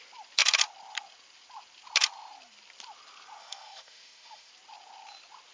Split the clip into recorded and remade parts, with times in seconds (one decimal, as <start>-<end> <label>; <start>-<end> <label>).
0.0-3.4 recorded; 3.4-4.5 remade; 4.5-5.5 recorded